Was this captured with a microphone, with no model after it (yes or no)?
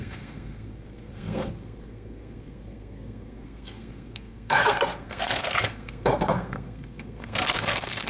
no